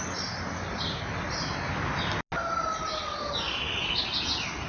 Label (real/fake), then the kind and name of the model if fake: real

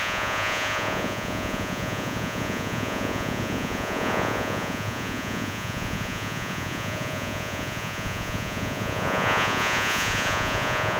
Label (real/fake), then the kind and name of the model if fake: fake, vocoder, Vocos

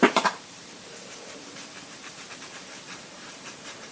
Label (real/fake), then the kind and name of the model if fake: fake, vocoder, BigVGAN v2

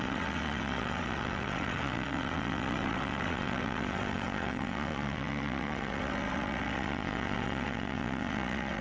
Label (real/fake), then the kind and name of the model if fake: fake, vocoder, WaveNeXt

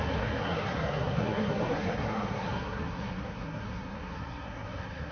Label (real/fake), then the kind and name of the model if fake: fake, codec, SNAC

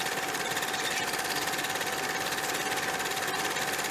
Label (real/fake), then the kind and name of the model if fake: real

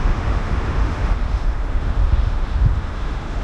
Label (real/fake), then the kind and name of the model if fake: fake, autoencoder, DAC-VAE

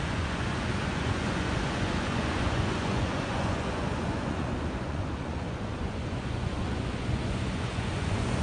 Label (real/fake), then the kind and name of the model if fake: fake, vocoder, Vocos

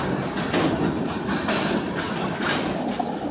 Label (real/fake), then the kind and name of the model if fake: real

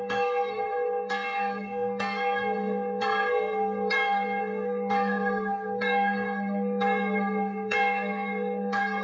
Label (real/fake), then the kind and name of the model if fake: fake, codec, SNAC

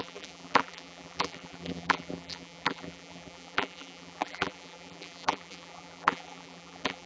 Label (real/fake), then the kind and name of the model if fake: fake, vocoder, BigVGAN v2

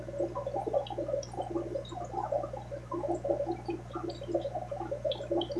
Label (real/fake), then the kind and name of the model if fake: real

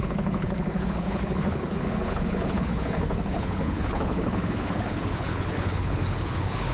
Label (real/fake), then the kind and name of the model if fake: fake, codec, HILCodec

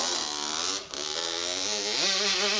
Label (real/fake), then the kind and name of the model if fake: real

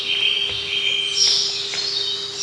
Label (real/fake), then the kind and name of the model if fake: real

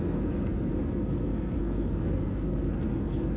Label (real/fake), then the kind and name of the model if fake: fake, codec, SNAC